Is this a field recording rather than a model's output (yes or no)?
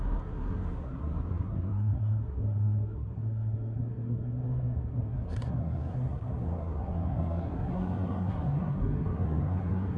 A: no